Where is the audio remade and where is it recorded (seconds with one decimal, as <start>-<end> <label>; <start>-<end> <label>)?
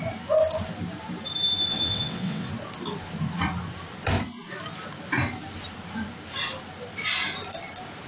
0.0-1.7 recorded; 1.7-2.5 remade; 2.5-8.1 recorded